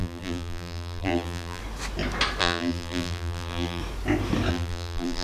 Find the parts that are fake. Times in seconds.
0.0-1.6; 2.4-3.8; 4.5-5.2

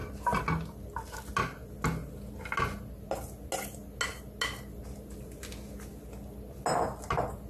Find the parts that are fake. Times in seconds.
none

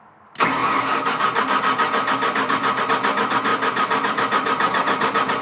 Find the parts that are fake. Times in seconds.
none

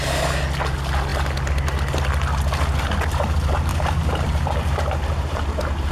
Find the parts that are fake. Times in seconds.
3.7-5.9

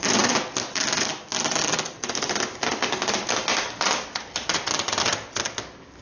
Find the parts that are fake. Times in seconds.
none